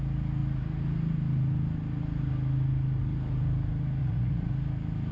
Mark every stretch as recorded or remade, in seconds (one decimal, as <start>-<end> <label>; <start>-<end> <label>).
0.0-4.0 recorded; 4.0-4.5 remade; 4.5-5.1 recorded